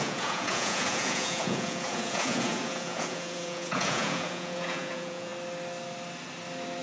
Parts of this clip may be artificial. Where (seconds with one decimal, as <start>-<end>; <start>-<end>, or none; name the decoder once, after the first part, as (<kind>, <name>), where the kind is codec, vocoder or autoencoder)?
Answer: 0.0-5.3 (vocoder, Vocos)